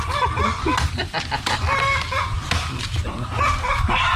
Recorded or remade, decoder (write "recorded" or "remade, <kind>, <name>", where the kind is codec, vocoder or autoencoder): recorded